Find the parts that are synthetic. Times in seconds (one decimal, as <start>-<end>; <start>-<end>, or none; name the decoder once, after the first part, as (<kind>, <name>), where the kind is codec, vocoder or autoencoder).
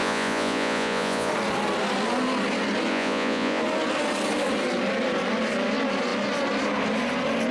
0.0-1.3 (vocoder, Vocos); 2.9-3.6